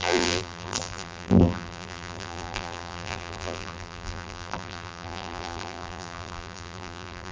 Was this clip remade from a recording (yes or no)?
yes